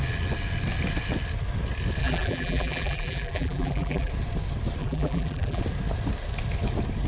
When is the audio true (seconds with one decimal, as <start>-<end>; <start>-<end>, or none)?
0.0-2.0; 4.1-4.8; 5.6-7.1